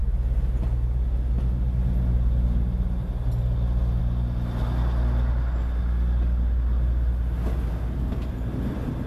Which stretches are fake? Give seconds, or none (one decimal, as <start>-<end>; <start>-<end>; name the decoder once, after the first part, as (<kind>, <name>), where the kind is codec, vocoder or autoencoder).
7.7-8.3 (codec, SNAC)